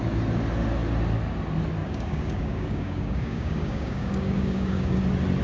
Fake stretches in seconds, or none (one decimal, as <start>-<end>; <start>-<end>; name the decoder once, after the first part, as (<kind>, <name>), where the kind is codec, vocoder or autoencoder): 1.8-5.0 (codec, DAC)